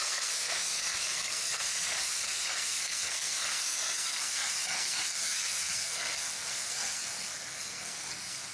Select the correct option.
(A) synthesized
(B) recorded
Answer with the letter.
A